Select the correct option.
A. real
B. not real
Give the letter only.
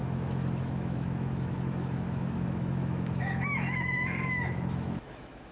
B